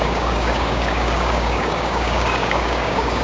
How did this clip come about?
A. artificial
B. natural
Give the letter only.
A